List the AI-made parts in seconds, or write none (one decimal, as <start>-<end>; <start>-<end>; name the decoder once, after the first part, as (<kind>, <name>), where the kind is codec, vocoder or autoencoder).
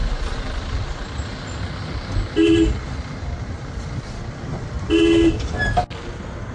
none